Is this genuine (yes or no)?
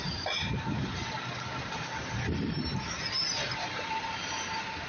yes